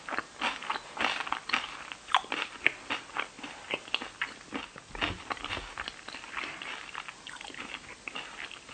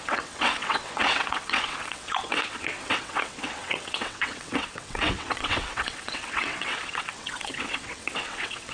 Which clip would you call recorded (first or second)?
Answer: first